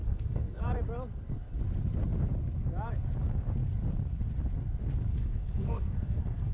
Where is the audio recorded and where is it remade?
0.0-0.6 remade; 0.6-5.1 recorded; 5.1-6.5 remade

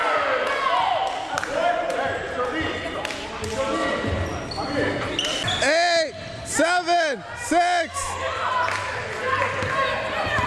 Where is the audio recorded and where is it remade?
0.0-10.5 recorded

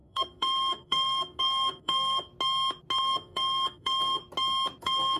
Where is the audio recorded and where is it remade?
0.0-2.3 remade; 2.3-3.0 recorded; 3.0-4.2 remade; 4.2-4.8 recorded; 4.8-5.2 remade

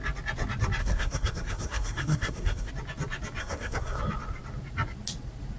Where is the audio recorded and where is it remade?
0.0-0.8 recorded; 0.8-2.7 remade; 2.7-3.4 recorded; 3.4-4.0 remade; 4.0-5.6 recorded

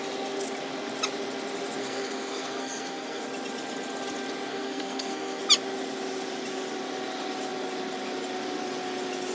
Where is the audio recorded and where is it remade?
0.0-1.8 recorded; 1.8-3.2 remade; 3.2-4.5 recorded; 4.5-5.4 remade; 5.4-9.3 recorded

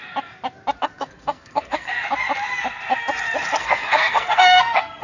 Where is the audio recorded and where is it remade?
0.0-0.8 recorded; 0.8-1.9 remade; 1.9-3.6 recorded; 3.6-5.0 remade

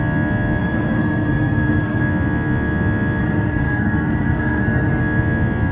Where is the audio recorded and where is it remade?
0.0-0.6 recorded; 0.6-2.0 remade; 2.0-3.2 recorded; 3.2-5.0 remade; 5.0-5.7 recorded